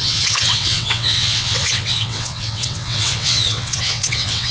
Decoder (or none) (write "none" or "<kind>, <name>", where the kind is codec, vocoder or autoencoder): vocoder, WaveNeXt